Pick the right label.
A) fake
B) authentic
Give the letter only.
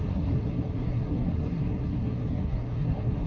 A